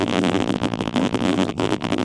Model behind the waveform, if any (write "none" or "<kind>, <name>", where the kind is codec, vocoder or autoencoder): vocoder, BigVGAN v2